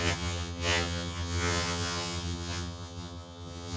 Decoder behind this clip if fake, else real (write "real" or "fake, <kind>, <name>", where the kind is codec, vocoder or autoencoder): fake, vocoder, HiFi-GAN